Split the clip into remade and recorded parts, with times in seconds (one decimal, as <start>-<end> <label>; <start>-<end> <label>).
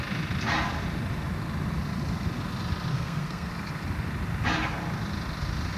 0.0-2.9 recorded; 2.9-3.5 remade; 3.5-5.8 recorded